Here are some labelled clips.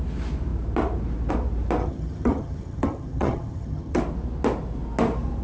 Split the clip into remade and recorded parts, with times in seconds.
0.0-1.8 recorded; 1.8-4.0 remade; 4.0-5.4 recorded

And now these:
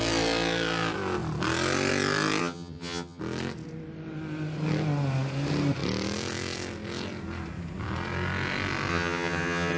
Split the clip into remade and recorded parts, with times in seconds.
0.0-2.4 recorded; 2.4-3.2 remade; 3.2-8.9 recorded; 8.9-9.8 remade

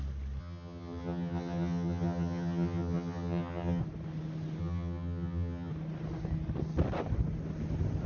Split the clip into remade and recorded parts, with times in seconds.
0.0-0.4 recorded; 0.4-3.8 remade; 3.8-4.6 recorded; 4.6-5.7 remade; 5.7-8.1 recorded

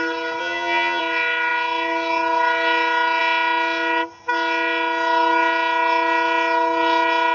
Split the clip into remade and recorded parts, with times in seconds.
0.0-0.4 recorded; 0.4-1.0 remade; 1.0-7.3 recorded

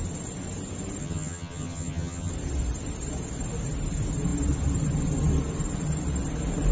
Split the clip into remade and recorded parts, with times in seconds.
0.0-1.0 recorded; 1.0-2.3 remade; 2.3-6.7 recorded